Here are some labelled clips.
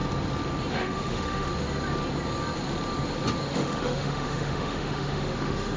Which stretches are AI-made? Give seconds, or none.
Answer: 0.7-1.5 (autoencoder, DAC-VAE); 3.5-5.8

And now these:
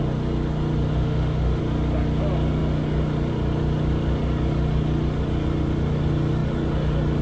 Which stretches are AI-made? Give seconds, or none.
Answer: 0.9-1.6 (autoencoder, DAC-VAE)

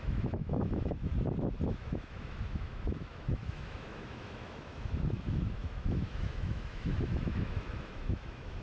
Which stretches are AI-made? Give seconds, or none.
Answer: 0.0-1.1 (autoencoder, DAC-VAE); 1.7-8.6

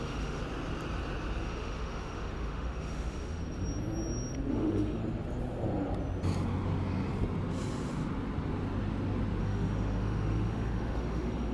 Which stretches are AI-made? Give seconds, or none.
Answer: 0.0-0.4 (autoencoder, DAC-VAE); 1.4-3.4; 4.5-5.0; 9.4-11.5